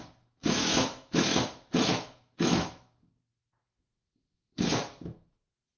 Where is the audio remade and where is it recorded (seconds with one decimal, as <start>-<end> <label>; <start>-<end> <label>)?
0.0-5.8 remade